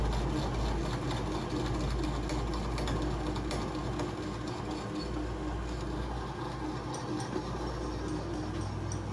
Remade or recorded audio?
recorded